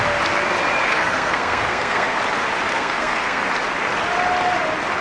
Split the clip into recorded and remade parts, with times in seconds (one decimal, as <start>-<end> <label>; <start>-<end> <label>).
0.0-0.9 recorded; 0.9-2.2 remade; 2.2-2.7 recorded; 2.7-3.4 remade; 3.4-5.0 recorded